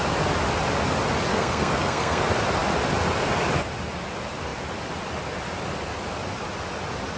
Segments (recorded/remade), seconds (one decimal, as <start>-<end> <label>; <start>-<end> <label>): 0.0-1.3 recorded; 1.3-2.2 remade; 2.2-7.2 recorded